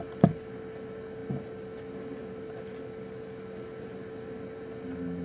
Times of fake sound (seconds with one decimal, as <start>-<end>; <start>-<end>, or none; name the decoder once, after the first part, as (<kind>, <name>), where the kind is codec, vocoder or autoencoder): none